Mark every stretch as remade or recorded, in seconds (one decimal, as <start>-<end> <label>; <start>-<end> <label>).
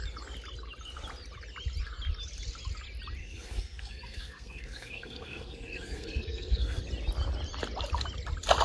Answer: 0.0-3.2 recorded; 3.2-6.8 remade; 6.8-8.6 recorded